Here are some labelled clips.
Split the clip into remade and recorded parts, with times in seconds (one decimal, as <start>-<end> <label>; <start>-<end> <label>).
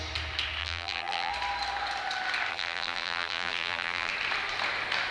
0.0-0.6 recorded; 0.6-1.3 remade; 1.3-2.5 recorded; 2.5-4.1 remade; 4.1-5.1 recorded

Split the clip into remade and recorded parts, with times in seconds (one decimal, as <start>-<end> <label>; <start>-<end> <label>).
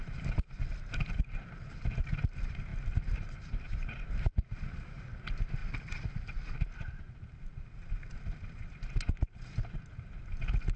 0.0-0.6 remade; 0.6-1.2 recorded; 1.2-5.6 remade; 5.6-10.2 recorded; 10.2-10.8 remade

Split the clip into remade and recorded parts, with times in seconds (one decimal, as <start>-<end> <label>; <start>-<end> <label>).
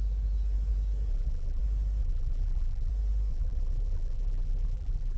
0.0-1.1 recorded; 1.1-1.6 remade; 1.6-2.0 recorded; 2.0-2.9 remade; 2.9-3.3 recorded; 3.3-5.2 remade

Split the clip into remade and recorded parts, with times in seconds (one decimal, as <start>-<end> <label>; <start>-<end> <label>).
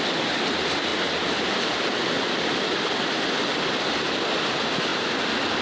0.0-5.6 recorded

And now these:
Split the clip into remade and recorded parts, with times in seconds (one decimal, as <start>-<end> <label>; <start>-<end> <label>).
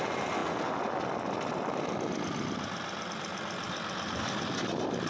0.0-5.1 recorded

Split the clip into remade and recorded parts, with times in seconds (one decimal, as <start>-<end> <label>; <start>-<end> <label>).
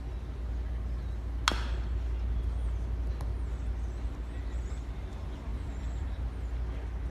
0.0-5.5 recorded; 5.5-6.2 remade; 6.2-7.1 recorded